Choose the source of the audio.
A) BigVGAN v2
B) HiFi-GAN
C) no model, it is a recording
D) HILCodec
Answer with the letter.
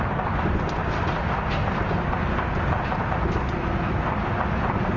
C